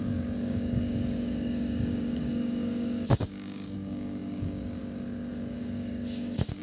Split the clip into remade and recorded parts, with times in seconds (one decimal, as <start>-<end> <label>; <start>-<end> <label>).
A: 0.0-6.6 remade